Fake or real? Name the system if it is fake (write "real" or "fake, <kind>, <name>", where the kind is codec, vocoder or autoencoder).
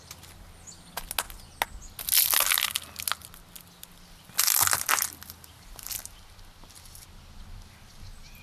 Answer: real